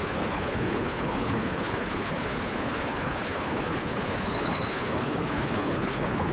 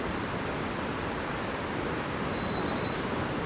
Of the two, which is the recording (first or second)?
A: second